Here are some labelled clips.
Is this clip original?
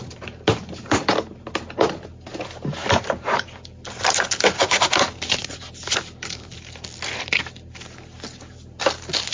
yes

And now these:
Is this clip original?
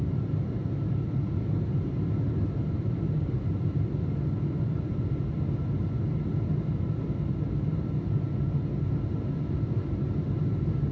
yes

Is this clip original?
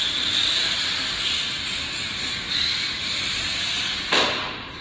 yes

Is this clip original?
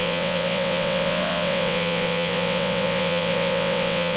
no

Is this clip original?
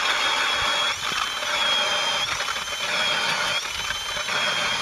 yes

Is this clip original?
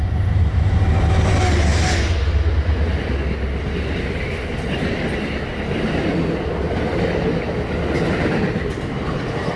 yes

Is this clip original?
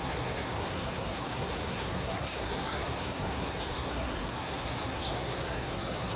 no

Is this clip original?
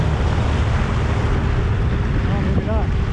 yes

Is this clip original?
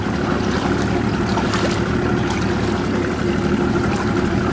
yes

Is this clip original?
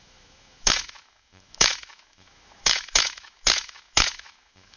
no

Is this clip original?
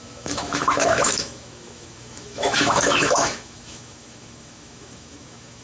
no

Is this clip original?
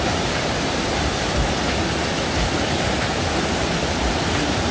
yes